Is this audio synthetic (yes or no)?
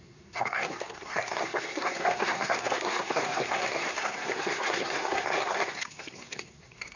yes